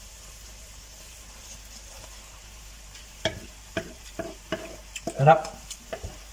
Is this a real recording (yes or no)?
no